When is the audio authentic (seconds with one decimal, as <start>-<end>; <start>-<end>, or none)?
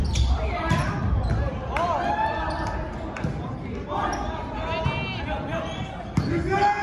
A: 0.0-6.8